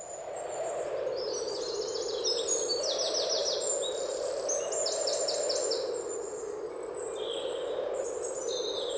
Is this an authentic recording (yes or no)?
yes